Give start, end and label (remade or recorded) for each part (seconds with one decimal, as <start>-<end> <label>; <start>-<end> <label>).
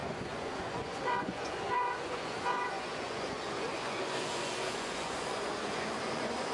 0.0-6.5 remade